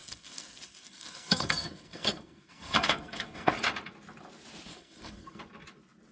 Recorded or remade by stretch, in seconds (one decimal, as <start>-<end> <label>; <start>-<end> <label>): 0.0-3.5 remade; 3.5-4.7 recorded; 4.7-5.4 remade; 5.4-6.1 recorded